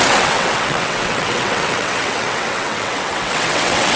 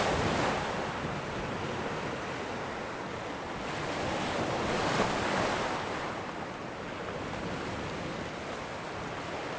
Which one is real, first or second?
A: second